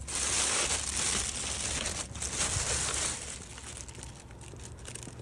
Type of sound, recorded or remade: recorded